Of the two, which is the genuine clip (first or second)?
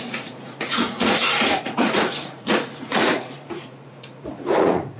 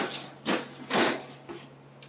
second